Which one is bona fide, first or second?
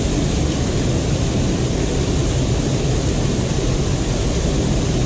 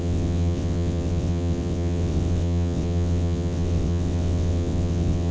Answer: first